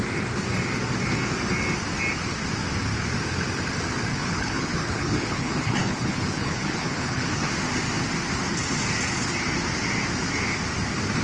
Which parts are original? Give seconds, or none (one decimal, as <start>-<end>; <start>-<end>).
0.0-4.1; 7.5-11.2